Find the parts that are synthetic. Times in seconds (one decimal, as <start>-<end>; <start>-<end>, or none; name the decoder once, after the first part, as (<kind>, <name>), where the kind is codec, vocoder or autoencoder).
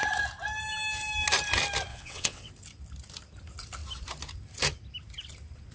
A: 1.9-2.5 (vocoder, WaveNeXt)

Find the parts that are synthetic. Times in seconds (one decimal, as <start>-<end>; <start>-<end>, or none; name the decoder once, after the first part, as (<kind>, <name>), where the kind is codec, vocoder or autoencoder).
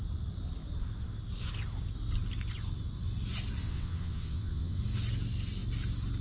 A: 3.6-4.8 (vocoder, WaveNeXt)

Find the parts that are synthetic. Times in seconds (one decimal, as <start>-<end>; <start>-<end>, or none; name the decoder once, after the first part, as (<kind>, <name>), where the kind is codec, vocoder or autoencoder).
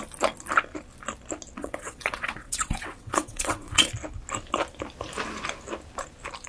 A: 1.6-3.9 (vocoder, WaveNeXt)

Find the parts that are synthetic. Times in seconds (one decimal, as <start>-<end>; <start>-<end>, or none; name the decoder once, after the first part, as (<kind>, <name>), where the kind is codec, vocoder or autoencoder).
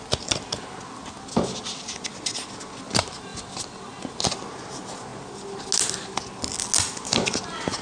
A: none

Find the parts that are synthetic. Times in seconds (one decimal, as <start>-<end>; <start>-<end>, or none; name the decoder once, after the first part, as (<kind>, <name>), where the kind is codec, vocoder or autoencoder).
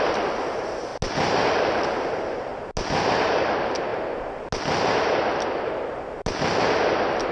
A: none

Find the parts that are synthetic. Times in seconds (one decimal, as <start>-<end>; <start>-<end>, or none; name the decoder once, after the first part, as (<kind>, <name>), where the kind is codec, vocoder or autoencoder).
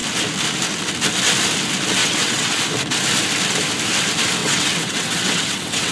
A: 2.0-2.6 (vocoder, WaveNeXt); 4.4-5.9